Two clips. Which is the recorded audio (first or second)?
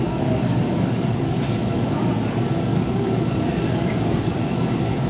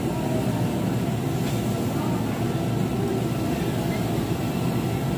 second